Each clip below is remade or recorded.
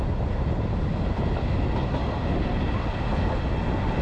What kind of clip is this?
recorded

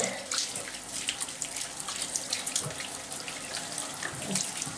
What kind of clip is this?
recorded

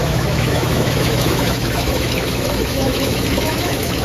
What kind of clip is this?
remade